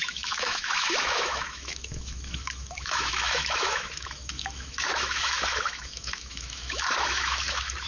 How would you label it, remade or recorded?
remade